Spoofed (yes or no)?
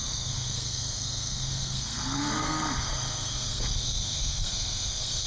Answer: yes